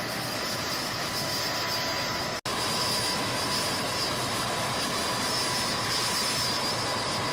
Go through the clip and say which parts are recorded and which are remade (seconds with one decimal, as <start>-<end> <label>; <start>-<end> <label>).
0.0-0.4 recorded; 0.4-1.1 remade; 1.1-7.3 recorded